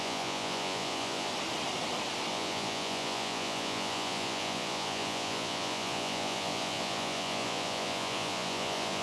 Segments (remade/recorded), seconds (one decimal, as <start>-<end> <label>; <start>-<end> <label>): 0.0-1.3 remade; 1.3-2.3 recorded; 2.3-9.0 remade